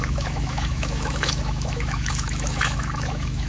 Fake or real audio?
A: fake